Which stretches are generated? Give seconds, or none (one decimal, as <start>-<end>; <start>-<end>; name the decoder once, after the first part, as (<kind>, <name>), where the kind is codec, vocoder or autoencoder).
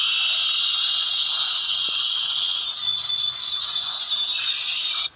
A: 1.0-4.1 (vocoder, Vocos)